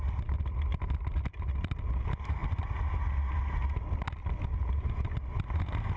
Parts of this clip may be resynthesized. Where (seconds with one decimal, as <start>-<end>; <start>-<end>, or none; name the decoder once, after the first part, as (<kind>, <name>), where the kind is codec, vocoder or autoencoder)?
none